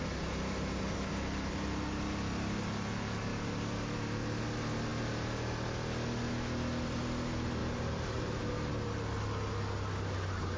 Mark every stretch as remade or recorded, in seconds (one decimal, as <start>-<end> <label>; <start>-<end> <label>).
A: 0.0-3.3 recorded; 3.3-4.4 remade; 4.4-7.6 recorded; 7.6-8.7 remade; 8.7-10.6 recorded